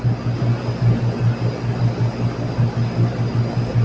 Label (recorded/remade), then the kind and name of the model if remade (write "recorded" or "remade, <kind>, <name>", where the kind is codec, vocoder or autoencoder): recorded